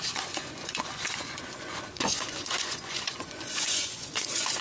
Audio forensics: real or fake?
fake